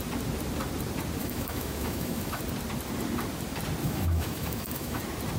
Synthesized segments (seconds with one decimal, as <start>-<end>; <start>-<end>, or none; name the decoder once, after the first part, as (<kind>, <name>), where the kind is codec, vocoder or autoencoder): 1.2-2.4 (autoencoder, DAC-VAE); 3.8-5.0

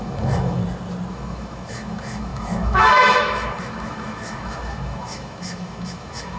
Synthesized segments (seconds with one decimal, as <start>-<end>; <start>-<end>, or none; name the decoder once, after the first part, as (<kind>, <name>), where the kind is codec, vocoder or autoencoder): 0.0-0.6 (autoencoder, DAC-VAE); 1.1-6.4

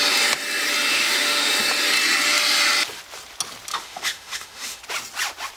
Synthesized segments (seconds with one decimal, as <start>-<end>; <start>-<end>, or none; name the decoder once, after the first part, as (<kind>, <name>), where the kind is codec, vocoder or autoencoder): 0.9-1.5 (autoencoder, DAC-VAE); 3.7-4.8

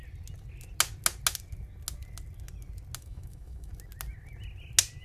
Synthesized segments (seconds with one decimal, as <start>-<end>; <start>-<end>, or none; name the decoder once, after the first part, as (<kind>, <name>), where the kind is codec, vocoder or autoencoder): 3.0-3.7 (autoencoder, DAC-VAE)

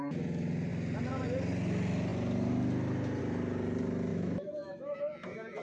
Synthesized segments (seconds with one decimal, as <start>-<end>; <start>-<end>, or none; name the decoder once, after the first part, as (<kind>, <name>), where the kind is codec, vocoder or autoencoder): 4.1-5.6 (autoencoder, DAC-VAE)

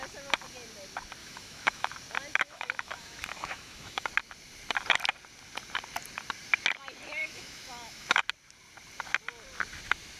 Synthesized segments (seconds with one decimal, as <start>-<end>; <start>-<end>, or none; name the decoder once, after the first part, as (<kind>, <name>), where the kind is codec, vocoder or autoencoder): 1.2-1.9 (autoencoder, DAC-VAE); 2.3-4.1; 7.2-8.2

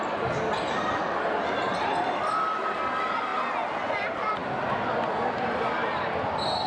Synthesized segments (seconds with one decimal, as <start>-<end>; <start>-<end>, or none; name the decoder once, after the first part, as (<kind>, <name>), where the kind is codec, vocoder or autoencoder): none